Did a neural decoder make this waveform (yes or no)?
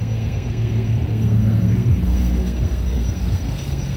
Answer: yes